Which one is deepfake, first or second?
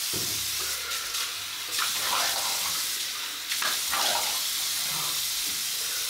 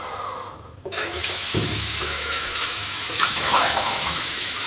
second